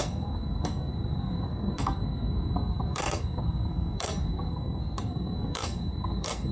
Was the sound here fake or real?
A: fake